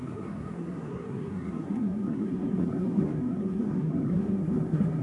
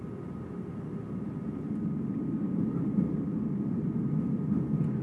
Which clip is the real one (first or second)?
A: second